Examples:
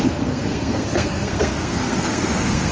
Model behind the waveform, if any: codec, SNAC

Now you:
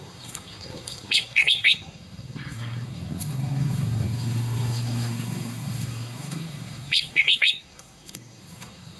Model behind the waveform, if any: codec, SNAC